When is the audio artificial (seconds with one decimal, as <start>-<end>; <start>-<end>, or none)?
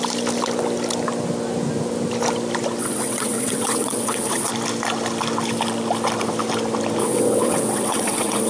2.8-4.5; 7.0-8.5